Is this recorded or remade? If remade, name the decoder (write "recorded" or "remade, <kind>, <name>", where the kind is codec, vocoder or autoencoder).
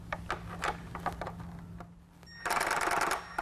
recorded